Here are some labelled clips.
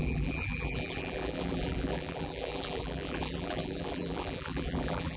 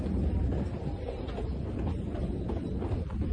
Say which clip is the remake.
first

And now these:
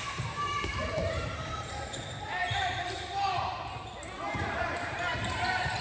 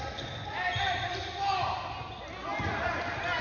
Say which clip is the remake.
first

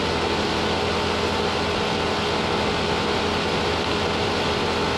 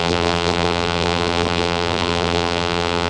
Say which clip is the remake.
second